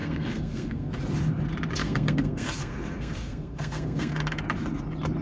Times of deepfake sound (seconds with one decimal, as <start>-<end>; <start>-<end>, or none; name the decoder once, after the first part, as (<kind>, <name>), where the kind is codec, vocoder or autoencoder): 0.0-0.9 (codec, SNAC); 1.8-4.4